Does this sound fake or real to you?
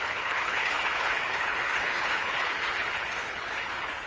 fake